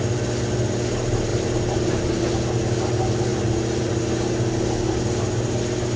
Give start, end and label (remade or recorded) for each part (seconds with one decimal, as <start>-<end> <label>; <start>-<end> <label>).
0.0-1.3 recorded; 1.3-2.2 remade; 2.2-3.3 recorded; 3.3-3.9 remade; 3.9-6.0 recorded